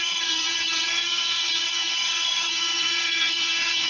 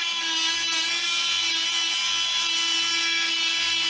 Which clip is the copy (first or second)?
first